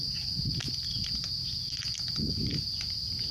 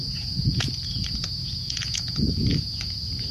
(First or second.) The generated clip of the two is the second